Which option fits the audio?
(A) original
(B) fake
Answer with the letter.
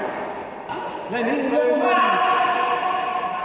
A